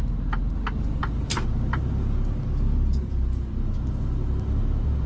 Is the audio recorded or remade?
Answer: recorded